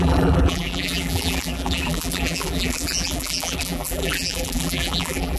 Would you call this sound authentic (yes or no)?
no